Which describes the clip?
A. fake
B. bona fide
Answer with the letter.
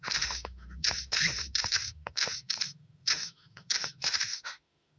A